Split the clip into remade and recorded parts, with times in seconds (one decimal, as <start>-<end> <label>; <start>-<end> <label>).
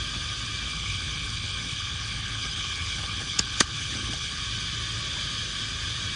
0.0-0.7 recorded; 0.7-4.4 remade; 4.4-6.2 recorded